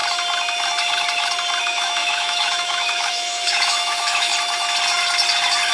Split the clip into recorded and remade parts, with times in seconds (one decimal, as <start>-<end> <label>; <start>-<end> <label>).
0.0-1.6 recorded; 1.6-4.3 remade; 4.3-5.7 recorded